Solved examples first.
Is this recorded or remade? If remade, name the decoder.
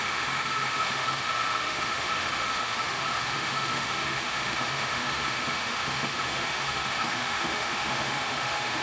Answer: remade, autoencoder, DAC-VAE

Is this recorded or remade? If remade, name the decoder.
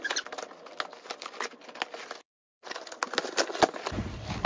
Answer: recorded